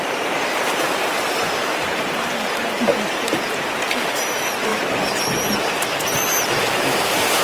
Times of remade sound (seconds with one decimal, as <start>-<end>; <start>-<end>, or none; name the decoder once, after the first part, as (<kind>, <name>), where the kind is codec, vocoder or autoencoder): 0.0-7.4 (vocoder, BigVGAN v2)